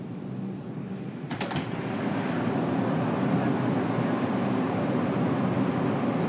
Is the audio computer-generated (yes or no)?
no